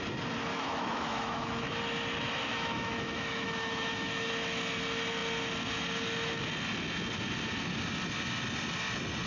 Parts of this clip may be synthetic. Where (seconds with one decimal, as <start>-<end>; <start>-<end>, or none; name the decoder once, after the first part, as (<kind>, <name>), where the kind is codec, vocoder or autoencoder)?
0.5-1.8 (autoencoder, DAC-VAE); 2.5-4.3